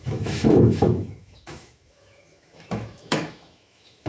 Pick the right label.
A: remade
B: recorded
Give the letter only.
A